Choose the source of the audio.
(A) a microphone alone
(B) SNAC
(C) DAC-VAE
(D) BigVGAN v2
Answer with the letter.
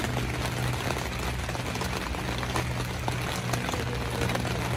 A